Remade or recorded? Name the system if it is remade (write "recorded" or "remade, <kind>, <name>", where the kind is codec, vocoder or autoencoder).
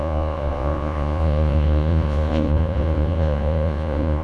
remade, vocoder, Vocos